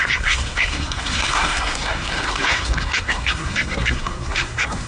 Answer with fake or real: fake